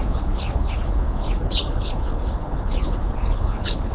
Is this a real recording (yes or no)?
no